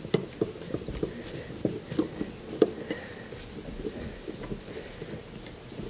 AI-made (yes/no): no